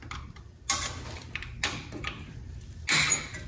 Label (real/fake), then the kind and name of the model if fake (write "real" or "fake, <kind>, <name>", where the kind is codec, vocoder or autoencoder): real